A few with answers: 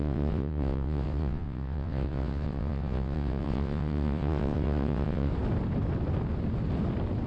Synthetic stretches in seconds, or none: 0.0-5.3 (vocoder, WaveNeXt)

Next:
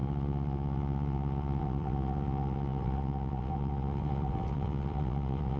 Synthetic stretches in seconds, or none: 0.0-5.6 (vocoder, WaveNeXt)

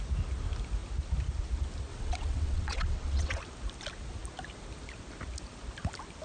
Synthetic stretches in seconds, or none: 1.9-3.4 (vocoder, WaveNeXt)

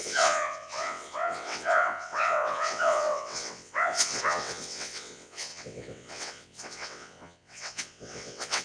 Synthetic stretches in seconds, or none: 0.0-8.6 (vocoder, WaveNeXt)

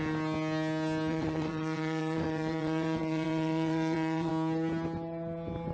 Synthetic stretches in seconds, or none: 1.1-4.3 (vocoder, WaveNeXt)

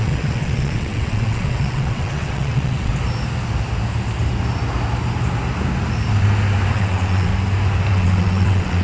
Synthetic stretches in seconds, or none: 0.0-2.9 (vocoder, WaveNeXt); 6.7-7.3; 7.9-8.8